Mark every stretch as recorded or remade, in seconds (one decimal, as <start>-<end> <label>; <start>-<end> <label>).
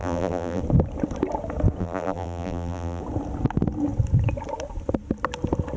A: 0.0-0.6 remade; 0.6-1.8 recorded; 1.8-3.0 remade; 3.0-5.8 recorded